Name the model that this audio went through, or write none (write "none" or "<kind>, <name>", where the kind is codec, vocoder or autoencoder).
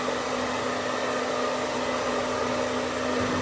none